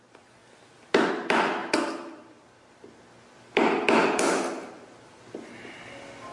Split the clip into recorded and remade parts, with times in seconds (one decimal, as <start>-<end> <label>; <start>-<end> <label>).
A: 0.0-6.3 recorded